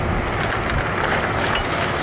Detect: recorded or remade recorded